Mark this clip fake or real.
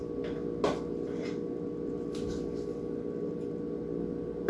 real